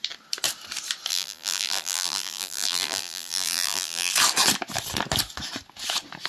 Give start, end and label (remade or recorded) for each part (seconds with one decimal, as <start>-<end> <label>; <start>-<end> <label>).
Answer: 0.0-1.1 recorded; 1.1-4.1 remade; 4.1-6.3 recorded